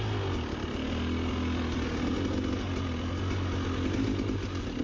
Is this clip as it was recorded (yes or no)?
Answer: yes